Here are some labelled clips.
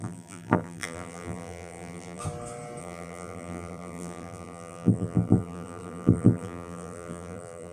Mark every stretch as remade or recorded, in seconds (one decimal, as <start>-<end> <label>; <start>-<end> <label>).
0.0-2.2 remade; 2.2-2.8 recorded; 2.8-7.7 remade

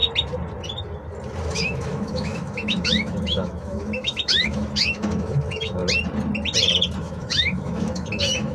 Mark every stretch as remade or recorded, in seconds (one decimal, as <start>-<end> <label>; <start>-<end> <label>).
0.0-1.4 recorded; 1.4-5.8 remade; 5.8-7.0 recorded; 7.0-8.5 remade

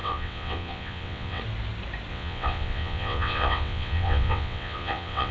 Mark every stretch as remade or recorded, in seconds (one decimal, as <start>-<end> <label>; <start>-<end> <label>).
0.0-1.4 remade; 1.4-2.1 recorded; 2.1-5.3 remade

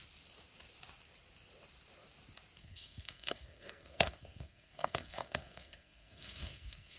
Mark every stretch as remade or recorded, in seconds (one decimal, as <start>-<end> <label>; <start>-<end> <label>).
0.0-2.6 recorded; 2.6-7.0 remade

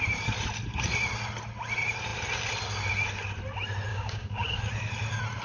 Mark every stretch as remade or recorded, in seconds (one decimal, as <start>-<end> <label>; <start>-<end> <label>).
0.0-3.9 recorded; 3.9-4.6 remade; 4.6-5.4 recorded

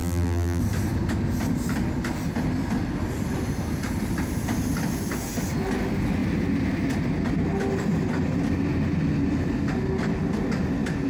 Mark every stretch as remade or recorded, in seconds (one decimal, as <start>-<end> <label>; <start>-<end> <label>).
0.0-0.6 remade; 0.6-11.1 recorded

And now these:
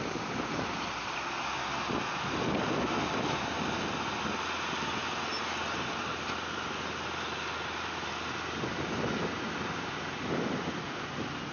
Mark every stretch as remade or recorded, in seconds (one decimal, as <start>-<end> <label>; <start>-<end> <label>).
0.0-11.5 recorded

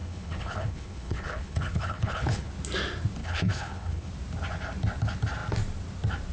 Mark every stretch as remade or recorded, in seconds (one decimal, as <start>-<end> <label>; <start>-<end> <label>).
0.0-2.5 remade; 2.5-3.2 recorded; 3.2-4.1 remade; 4.1-6.3 recorded